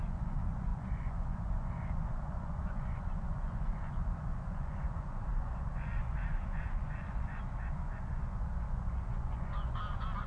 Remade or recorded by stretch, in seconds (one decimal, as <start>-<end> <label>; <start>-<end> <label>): 0.0-10.3 remade